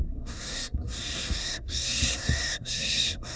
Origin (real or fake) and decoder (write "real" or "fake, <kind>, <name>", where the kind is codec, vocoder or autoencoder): fake, codec, SNAC